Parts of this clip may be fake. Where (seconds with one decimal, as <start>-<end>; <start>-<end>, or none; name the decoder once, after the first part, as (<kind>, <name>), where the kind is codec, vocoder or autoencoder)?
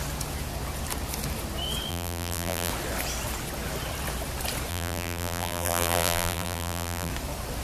1.9-2.7 (vocoder, BigVGAN v2); 4.7-7.1